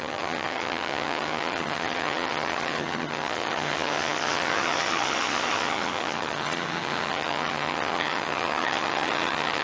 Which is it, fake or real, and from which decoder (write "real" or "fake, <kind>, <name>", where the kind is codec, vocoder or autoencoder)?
fake, vocoder, HiFi-GAN